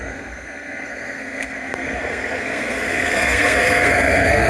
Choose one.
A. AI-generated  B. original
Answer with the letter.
A